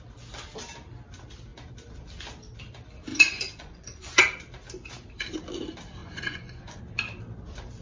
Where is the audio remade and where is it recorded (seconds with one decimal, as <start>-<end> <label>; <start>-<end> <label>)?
0.0-3.1 recorded; 3.1-4.1 remade; 4.1-6.0 recorded; 6.0-6.8 remade; 6.8-7.8 recorded